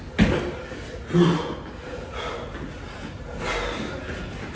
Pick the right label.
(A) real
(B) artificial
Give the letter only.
A